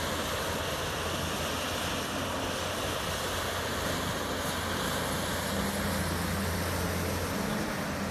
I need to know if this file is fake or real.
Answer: real